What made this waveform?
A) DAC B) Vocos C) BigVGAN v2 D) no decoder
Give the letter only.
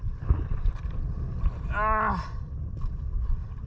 D